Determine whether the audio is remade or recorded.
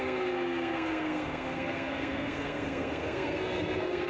remade